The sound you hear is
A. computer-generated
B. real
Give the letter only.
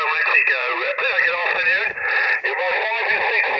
A